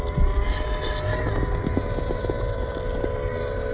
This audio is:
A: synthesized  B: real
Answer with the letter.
B